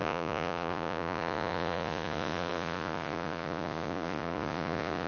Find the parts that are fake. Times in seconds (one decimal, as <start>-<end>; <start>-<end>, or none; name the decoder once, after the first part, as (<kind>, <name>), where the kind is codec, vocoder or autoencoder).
0.0-5.1 (vocoder, Vocos)